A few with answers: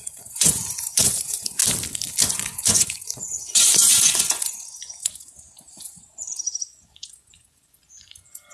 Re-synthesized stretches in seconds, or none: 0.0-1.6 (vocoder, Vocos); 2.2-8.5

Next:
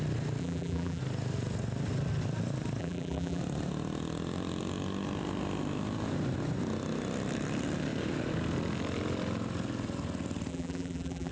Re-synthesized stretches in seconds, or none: 0.4-1.0 (vocoder, BigVGAN v2); 2.8-3.4; 10.5-11.3

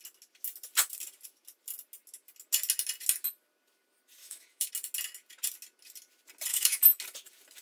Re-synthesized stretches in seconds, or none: 4.2-4.7 (autoencoder, DAC-VAE); 6.5-7.0

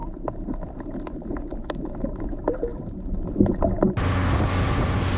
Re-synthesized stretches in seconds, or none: none

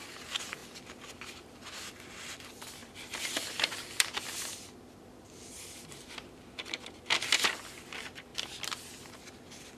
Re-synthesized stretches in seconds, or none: 2.8-4.8 (vocoder, BigVGAN v2)

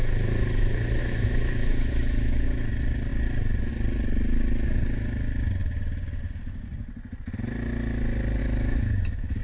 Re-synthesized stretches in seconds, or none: 0.0-2.7 (autoencoder, DAC-VAE); 8.4-9.4

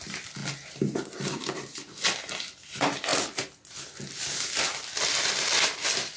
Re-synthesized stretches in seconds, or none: none

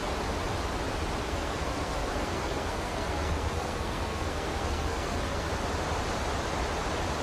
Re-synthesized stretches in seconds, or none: 1.2-5.5 (codec, SNAC)